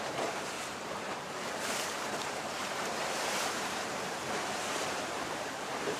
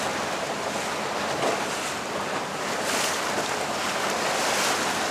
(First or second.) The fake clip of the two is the first